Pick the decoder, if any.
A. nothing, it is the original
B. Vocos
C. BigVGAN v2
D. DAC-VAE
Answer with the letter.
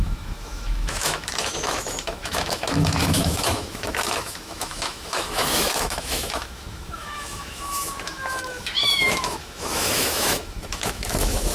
D